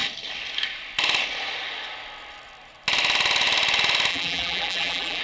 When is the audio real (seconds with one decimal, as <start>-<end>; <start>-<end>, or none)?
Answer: 0.0-4.1